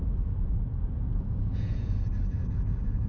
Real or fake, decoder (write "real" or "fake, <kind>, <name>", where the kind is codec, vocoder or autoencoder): fake, vocoder, Vocos